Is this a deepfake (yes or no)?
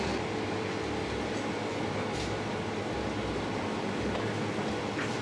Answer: no